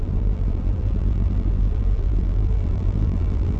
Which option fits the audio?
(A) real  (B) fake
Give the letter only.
B